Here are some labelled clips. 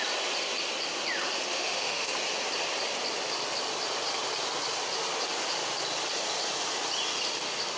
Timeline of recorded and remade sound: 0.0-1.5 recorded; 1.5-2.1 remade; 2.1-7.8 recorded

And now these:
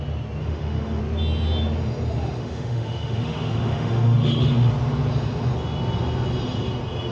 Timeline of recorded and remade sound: 0.0-0.4 recorded; 0.4-1.0 remade; 1.0-2.4 recorded; 2.4-4.7 remade; 4.7-7.1 recorded

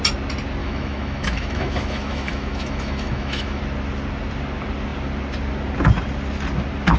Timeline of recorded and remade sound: 0.0-0.6 recorded; 0.6-3.6 remade; 3.6-7.0 recorded

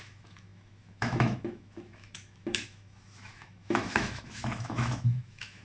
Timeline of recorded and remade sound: 0.0-5.6 remade

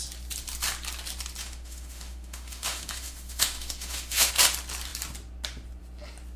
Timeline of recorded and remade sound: 0.0-1.4 recorded; 1.4-4.3 remade; 4.3-6.4 recorded

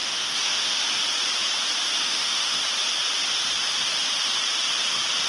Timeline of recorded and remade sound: 0.0-0.8 remade; 0.8-2.0 recorded; 2.0-2.6 remade; 2.6-5.3 recorded

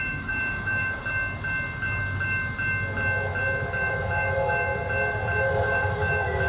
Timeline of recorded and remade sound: 0.0-1.0 remade; 1.0-3.9 recorded; 3.9-4.7 remade; 4.7-5.4 recorded; 5.4-6.5 remade

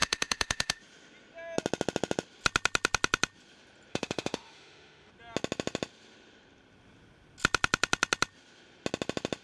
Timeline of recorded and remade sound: 0.0-0.8 remade; 0.8-3.9 recorded; 3.9-5.1 remade; 5.1-9.4 recorded